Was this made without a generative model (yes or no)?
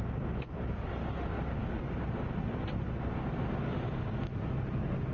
yes